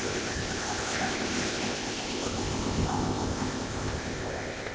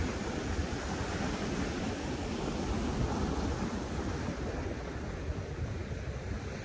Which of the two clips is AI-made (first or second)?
first